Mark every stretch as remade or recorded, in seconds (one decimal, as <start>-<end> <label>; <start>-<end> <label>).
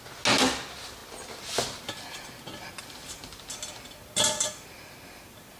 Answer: 0.0-5.6 recorded